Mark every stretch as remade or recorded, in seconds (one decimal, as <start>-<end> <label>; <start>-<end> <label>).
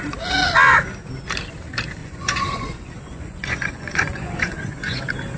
0.0-2.0 recorded; 2.0-5.0 remade; 5.0-5.4 recorded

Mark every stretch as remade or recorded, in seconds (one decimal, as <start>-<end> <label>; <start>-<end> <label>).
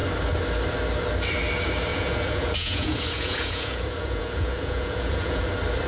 0.0-1.9 recorded; 1.9-5.4 remade; 5.4-5.9 recorded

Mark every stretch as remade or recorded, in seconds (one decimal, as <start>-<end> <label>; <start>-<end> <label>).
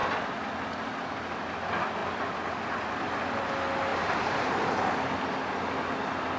0.0-3.9 recorded; 3.9-4.9 remade; 4.9-6.4 recorded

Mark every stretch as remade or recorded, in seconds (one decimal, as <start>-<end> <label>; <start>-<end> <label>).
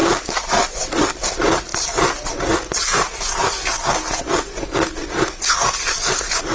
0.0-0.7 remade; 0.7-6.5 recorded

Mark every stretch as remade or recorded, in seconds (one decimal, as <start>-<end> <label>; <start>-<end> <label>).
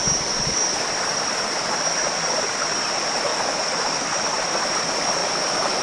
0.0-0.6 remade; 0.6-5.8 recorded